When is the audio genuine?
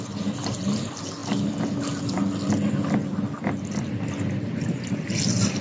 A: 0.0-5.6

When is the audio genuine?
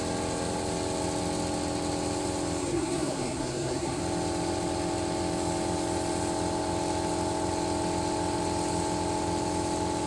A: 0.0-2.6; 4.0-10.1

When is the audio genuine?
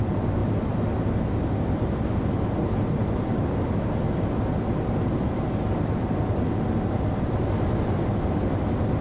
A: 0.0-9.0